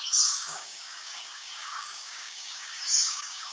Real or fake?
fake